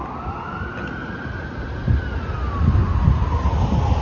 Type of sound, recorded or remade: recorded